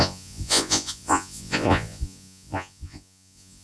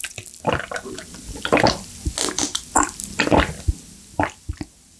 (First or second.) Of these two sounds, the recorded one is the second